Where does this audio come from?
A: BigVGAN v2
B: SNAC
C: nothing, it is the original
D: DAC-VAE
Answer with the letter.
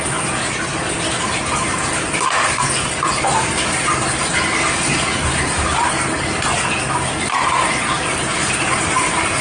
C